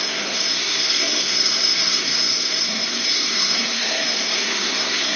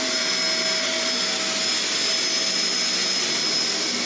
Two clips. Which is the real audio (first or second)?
second